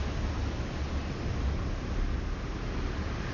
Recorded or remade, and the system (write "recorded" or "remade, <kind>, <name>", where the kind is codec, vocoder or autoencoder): recorded